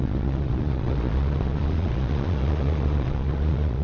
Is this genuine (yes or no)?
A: no